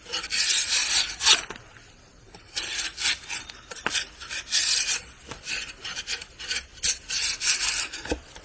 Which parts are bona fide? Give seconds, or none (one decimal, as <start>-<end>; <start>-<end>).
0.0-8.4